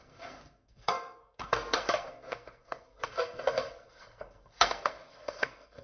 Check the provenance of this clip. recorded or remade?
remade